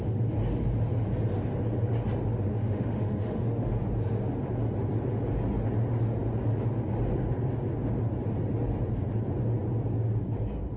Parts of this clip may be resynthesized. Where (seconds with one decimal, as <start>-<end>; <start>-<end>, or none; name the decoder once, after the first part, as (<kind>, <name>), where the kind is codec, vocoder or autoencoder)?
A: 2.5-3.7 (autoencoder, DAC-VAE)